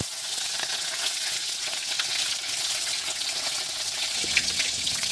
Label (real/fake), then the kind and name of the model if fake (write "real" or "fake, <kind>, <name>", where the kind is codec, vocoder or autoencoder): fake, vocoder, WaveNeXt